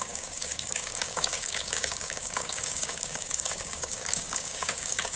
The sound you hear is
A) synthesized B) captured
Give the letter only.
A